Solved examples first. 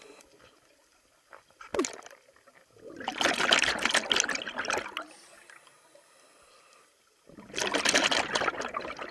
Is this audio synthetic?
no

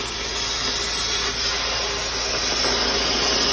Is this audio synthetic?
no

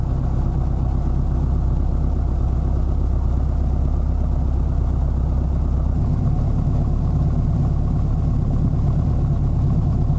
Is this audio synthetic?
no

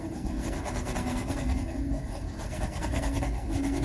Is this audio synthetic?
yes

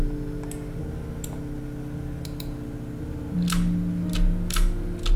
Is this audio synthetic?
no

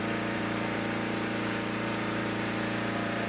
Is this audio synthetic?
yes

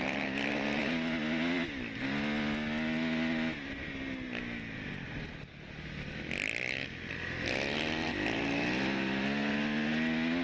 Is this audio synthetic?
no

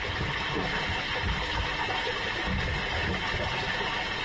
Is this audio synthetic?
no